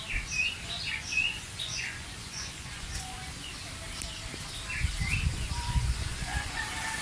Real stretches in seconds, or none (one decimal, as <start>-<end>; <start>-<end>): 0.0-0.4; 3.5-5.3; 6.6-7.0